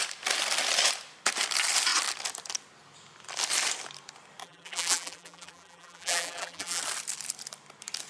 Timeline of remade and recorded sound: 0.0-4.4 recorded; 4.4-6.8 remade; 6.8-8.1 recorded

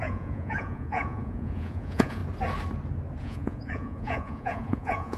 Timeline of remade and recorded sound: 0.0-2.2 remade; 2.2-3.2 recorded; 3.2-5.2 remade

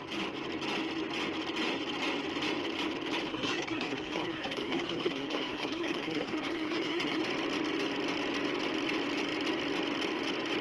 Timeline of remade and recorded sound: 0.0-3.3 recorded; 3.3-7.2 remade; 7.2-10.6 recorded

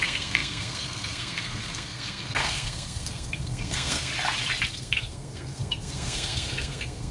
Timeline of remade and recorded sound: 0.0-4.1 remade; 4.1-4.7 recorded; 4.7-7.1 remade

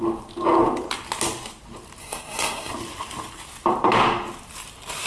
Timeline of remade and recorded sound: 0.0-2.0 recorded; 2.0-2.7 remade; 2.7-5.1 recorded